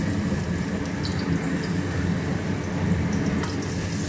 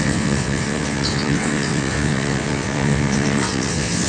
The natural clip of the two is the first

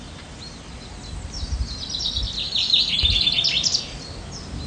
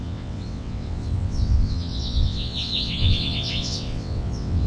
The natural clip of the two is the first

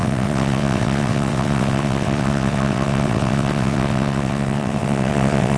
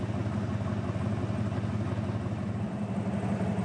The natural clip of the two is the second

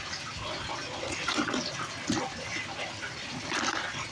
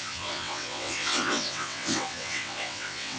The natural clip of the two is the first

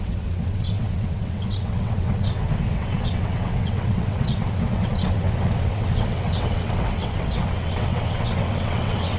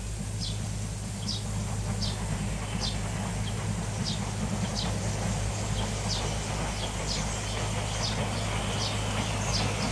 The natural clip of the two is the second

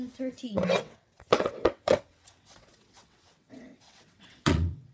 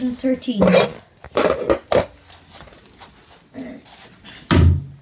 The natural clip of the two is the second